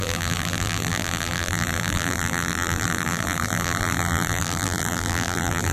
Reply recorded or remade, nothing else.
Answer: remade